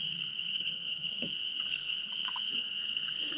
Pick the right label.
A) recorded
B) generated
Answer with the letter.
B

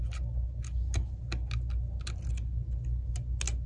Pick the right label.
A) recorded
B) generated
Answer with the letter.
A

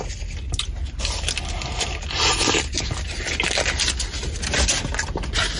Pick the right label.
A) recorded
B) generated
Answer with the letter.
A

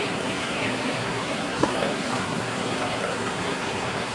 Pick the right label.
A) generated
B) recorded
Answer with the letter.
A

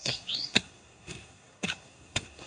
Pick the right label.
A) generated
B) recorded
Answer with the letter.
A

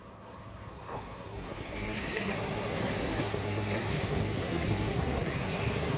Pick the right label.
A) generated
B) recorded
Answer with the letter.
A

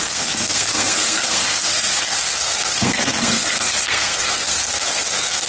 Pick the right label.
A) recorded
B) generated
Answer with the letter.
B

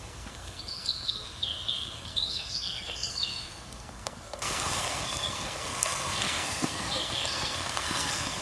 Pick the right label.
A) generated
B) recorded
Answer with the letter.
A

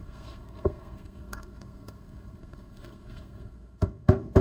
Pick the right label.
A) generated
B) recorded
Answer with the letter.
A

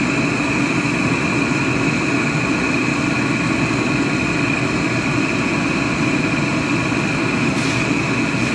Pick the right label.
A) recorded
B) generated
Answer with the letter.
A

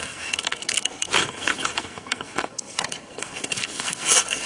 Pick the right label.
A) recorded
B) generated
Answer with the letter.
B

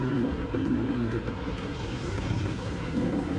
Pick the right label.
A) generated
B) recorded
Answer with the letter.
A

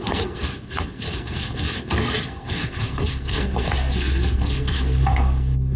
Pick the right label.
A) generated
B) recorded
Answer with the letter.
A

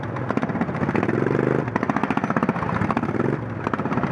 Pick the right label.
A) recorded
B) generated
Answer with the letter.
A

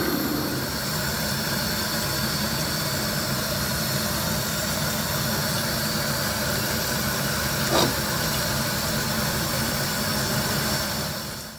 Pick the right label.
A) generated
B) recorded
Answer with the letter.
B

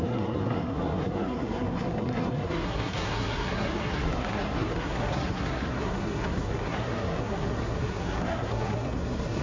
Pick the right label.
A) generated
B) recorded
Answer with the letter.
A